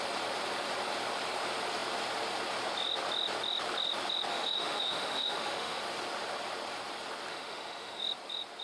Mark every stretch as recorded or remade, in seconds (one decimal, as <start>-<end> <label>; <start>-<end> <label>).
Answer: 0.0-4.3 recorded; 4.3-5.8 remade; 5.8-7.3 recorded; 7.3-8.0 remade; 8.0-8.6 recorded